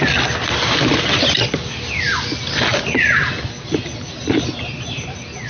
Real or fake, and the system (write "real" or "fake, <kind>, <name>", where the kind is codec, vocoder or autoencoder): real